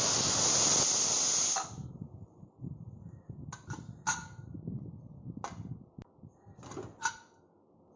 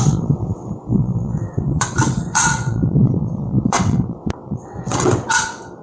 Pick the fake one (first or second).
second